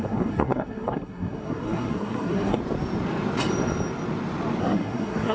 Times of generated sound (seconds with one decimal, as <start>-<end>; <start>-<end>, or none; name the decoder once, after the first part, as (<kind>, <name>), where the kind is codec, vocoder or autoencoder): 0.0-2.6 (codec, SNAC); 4.6-5.3